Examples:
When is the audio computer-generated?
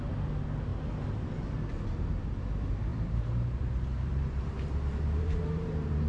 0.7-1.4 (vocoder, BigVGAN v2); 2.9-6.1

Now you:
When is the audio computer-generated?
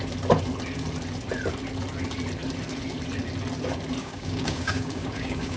4.0-5.6 (codec, DAC)